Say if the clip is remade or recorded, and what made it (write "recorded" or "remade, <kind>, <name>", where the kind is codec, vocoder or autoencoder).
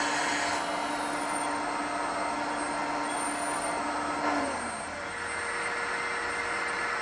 recorded